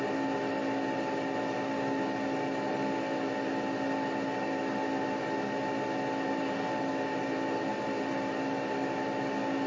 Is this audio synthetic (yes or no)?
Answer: no